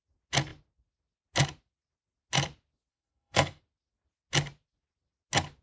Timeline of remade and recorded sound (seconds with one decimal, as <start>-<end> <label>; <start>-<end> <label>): 0.0-2.9 recorded; 2.9-3.6 remade; 3.6-5.6 recorded